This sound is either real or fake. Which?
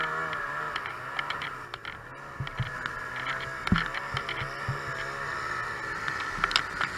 real